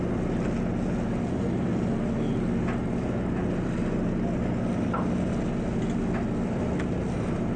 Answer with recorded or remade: recorded